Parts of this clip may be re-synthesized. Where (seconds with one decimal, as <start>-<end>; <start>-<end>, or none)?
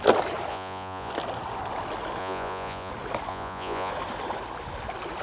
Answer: 0.5-1.1; 2.2-2.9; 3.3-3.9